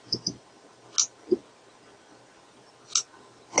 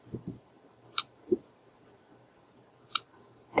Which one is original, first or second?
first